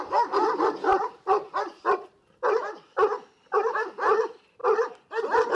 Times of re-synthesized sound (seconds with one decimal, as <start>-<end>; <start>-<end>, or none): none

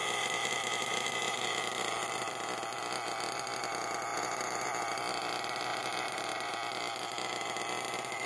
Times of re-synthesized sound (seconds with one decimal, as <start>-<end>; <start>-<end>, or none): 0.0-2.3; 4.1-4.8; 5.7-6.5

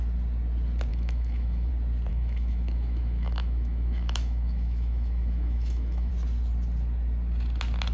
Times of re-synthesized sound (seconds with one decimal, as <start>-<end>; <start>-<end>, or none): 0.9-1.7; 2.1-6.1

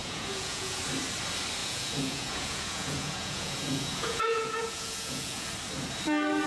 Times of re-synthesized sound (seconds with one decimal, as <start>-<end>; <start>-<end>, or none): 0.0-0.8; 1.6-5.5

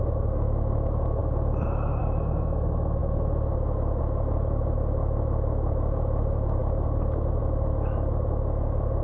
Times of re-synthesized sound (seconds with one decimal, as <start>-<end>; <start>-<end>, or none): 0.0-9.0